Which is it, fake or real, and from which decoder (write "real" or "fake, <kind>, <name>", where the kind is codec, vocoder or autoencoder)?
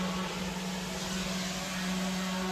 real